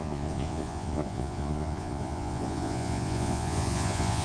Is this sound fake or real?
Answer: fake